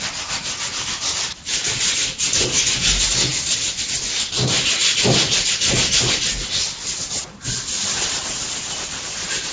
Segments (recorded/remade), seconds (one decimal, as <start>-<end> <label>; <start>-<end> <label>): 0.0-3.3 recorded; 3.3-4.0 remade; 4.0-4.8 recorded; 4.8-5.5 remade; 5.5-6.4 recorded; 6.4-8.2 remade; 8.2-9.5 recorded